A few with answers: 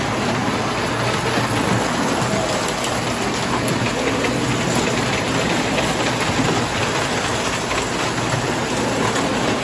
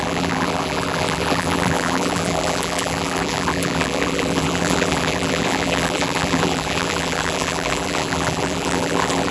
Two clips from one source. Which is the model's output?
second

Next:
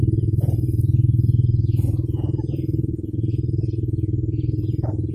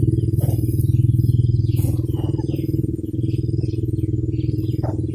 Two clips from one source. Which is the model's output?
first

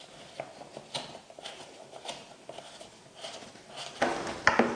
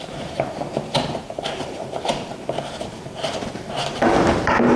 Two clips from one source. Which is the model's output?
second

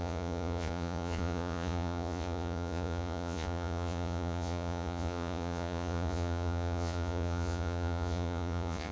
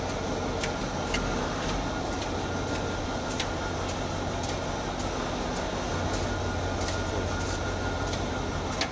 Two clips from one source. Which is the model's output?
first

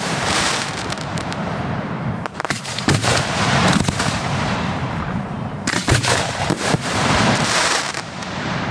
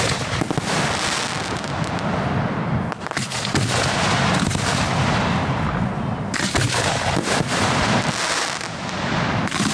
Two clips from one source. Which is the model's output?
first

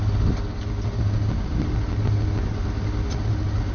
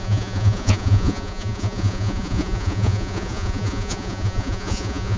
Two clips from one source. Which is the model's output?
second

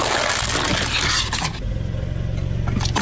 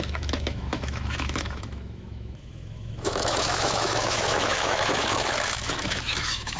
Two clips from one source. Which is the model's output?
second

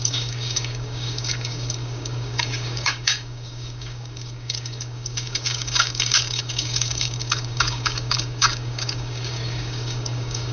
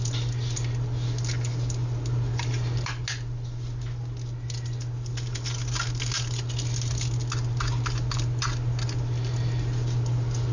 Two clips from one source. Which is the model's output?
first